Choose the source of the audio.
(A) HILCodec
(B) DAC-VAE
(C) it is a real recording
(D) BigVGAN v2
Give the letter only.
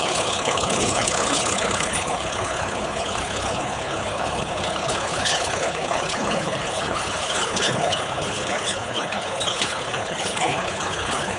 A